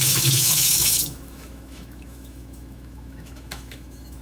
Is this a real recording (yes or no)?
no